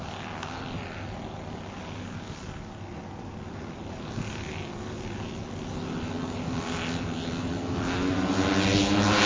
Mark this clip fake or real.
real